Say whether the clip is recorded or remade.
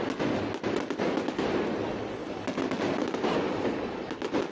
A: recorded